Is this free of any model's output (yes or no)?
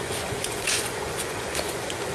no